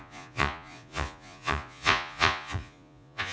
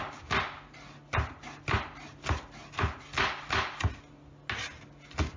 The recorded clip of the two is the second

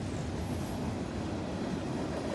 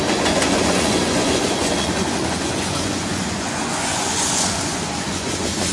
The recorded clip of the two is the first